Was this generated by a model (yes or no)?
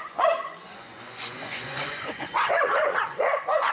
yes